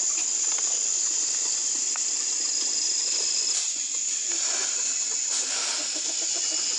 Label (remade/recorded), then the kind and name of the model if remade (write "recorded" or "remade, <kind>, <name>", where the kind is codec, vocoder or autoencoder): recorded